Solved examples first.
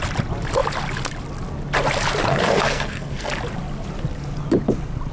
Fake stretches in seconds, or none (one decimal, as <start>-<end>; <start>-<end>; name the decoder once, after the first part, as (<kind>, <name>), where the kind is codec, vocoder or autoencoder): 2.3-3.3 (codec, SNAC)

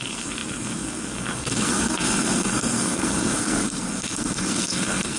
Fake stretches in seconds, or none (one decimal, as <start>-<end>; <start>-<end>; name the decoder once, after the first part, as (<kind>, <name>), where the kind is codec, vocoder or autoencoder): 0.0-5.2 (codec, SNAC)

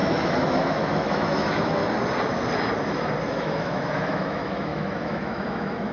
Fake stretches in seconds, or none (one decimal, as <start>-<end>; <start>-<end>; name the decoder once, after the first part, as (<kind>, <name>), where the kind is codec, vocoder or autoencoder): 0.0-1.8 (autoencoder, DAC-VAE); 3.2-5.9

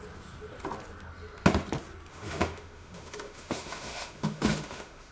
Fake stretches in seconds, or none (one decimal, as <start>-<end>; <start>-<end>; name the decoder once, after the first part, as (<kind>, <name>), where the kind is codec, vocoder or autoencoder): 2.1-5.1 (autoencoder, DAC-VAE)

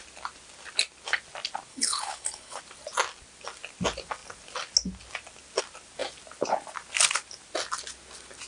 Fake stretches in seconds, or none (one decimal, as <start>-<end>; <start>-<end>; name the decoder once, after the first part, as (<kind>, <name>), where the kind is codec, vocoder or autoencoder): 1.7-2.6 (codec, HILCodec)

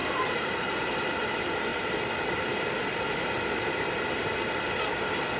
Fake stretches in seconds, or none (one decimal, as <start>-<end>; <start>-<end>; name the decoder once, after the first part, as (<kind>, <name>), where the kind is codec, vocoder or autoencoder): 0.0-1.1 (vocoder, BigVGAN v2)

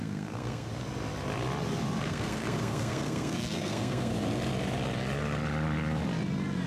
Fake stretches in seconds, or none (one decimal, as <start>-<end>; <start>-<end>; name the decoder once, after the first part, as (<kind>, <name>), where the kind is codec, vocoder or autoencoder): 0.0-0.7 (codec, SNAC); 2.0-4.1

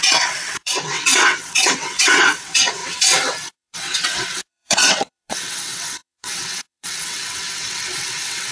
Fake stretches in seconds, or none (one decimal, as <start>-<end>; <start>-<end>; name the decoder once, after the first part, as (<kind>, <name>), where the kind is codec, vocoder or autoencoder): 0.0-8.5 (vocoder, WaveNeXt)